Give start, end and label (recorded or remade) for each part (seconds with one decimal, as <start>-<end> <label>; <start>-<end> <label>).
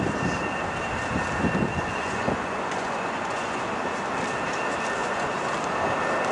0.0-1.7 recorded; 1.7-3.6 remade; 3.6-5.0 recorded; 5.0-5.5 remade; 5.5-6.3 recorded